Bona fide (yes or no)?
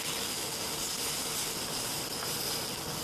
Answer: yes